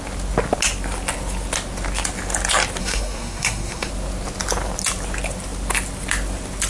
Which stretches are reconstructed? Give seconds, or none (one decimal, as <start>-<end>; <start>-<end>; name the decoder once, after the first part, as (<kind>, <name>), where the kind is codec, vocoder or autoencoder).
2.8-3.9 (codec, SNAC)